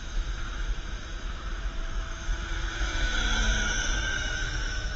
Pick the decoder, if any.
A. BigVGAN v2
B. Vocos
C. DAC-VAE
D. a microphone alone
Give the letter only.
C